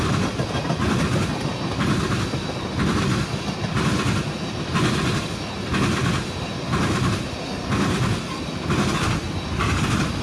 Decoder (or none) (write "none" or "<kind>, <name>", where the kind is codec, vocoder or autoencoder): none